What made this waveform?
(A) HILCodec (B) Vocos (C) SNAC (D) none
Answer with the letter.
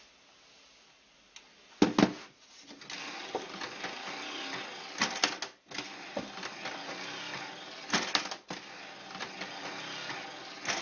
D